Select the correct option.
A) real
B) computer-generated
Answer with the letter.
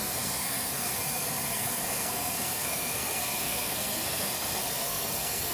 B